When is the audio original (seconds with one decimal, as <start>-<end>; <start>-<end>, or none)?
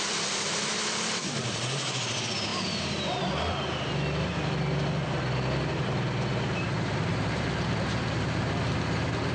0.0-6.3; 8.4-9.3